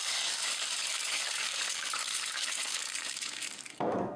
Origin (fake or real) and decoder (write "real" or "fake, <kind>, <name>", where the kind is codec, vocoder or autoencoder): fake, codec, DAC